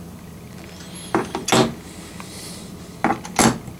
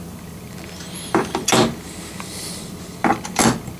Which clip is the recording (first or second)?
first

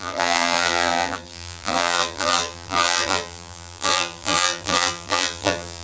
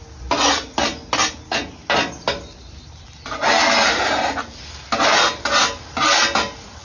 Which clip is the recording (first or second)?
second